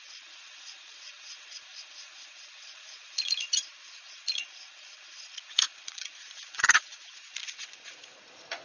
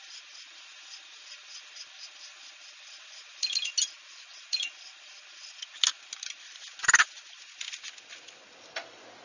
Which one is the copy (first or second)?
first